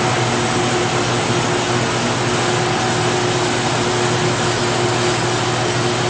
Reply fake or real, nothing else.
real